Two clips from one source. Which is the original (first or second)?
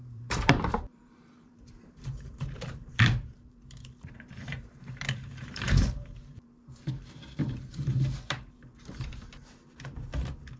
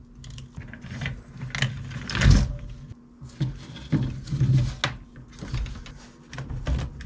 second